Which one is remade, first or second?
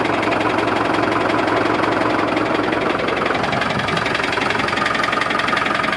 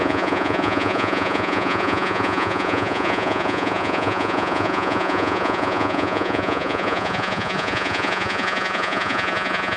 second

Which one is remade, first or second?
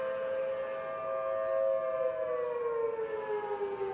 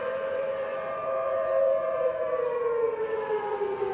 second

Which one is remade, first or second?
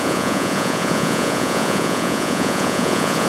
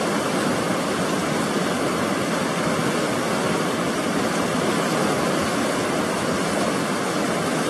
first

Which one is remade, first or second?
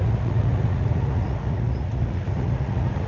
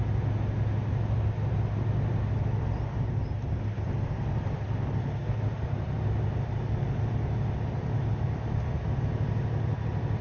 first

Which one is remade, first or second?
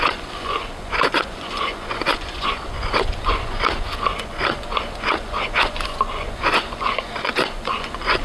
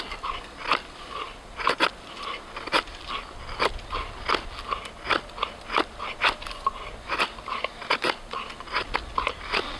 first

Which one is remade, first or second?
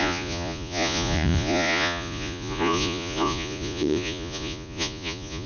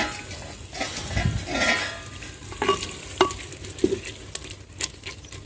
first